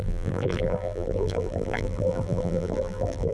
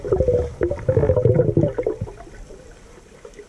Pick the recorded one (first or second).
second